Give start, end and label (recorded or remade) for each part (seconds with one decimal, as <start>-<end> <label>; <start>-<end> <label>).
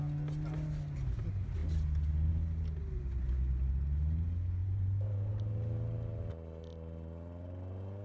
0.0-4.6 recorded; 4.6-5.3 remade; 5.3-8.0 recorded